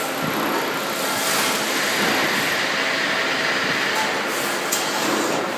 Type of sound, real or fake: real